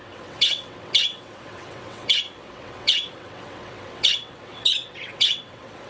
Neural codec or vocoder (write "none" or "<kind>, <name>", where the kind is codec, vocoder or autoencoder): vocoder, WaveNeXt